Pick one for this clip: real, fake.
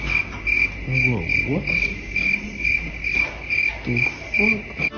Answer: real